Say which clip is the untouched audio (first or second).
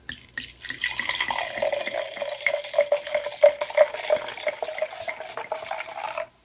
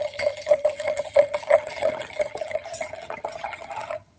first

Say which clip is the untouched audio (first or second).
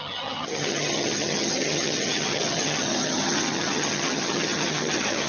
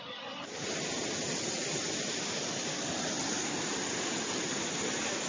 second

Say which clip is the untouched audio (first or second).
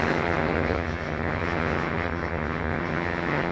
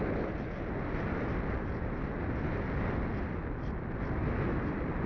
second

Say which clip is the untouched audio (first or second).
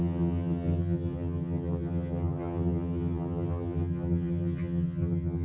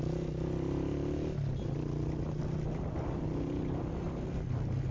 second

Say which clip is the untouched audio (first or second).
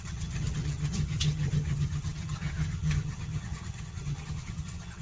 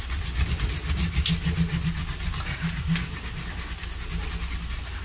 second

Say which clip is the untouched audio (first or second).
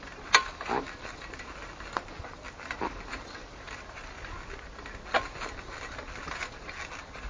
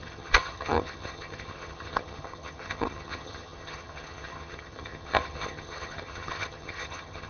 first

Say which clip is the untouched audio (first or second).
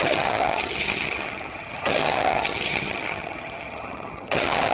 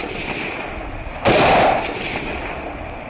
second